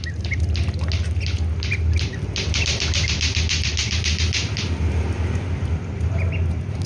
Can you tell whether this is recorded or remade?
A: recorded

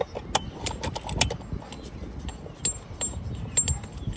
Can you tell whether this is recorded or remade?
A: recorded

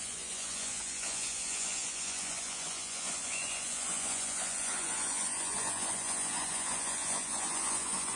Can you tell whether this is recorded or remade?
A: remade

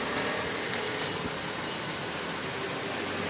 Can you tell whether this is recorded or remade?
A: recorded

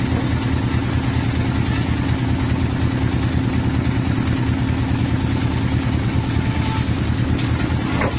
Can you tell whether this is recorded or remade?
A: recorded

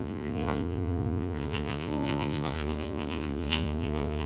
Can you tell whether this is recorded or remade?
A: remade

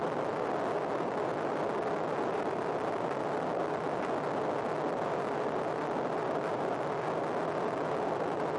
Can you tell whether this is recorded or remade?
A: recorded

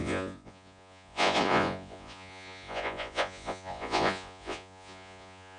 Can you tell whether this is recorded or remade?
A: remade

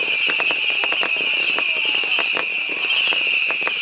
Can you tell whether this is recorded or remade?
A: recorded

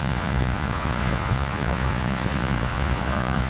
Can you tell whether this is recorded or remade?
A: remade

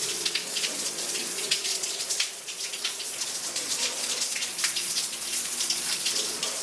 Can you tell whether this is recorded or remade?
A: remade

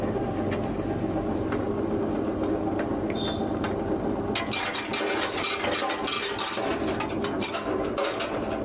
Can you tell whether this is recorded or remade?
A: recorded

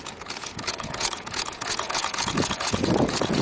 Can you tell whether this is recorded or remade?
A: remade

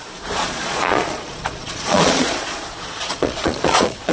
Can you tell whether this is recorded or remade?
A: remade